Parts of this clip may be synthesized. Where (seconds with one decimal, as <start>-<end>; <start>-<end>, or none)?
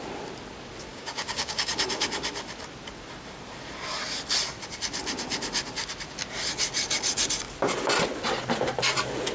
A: 0.9-1.7